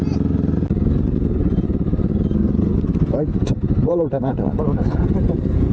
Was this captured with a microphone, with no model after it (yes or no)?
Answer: yes